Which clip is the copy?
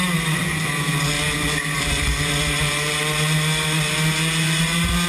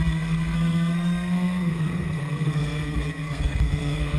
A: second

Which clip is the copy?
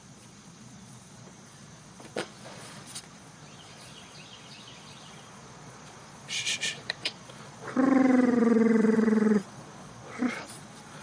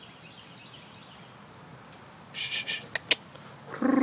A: first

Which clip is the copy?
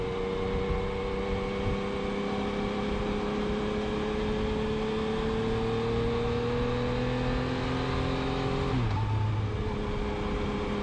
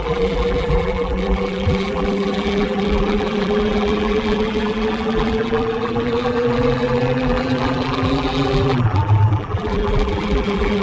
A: second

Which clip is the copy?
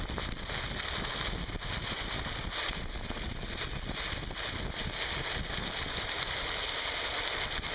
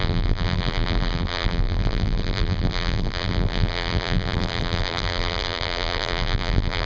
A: second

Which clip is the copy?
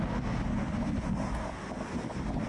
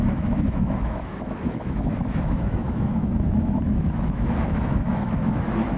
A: second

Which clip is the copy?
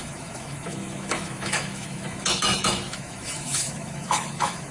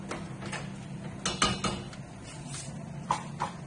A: first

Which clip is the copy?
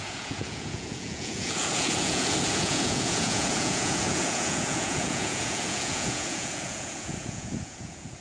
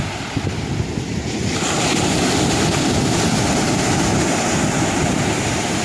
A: first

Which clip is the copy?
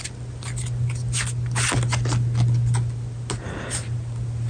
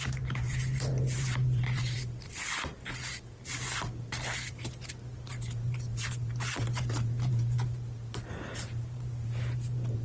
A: second